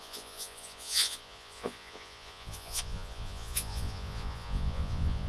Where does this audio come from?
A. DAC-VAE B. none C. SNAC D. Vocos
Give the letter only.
D